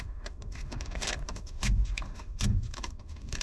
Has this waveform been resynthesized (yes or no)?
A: yes